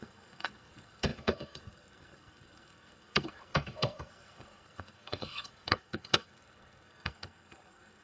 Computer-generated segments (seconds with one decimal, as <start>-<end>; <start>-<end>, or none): 0.0-8.0